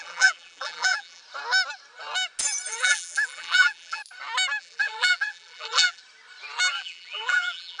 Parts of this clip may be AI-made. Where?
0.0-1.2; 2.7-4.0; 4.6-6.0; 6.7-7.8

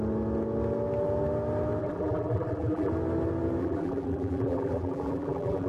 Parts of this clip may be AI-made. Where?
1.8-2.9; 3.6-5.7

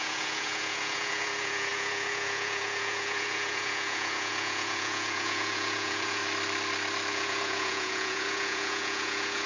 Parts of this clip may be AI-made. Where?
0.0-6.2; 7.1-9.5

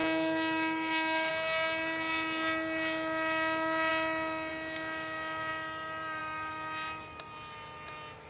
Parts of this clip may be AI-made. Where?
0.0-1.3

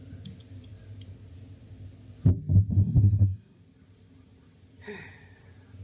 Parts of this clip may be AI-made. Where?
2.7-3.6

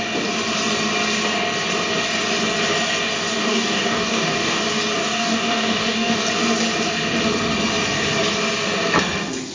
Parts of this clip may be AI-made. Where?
3.4-4.6; 5.0-6.3

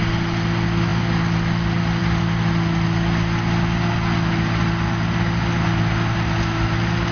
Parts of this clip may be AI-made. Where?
none

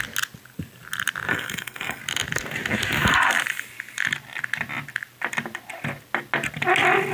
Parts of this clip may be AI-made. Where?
1.3-2.0